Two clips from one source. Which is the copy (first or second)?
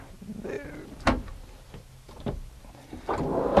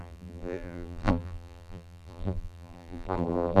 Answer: second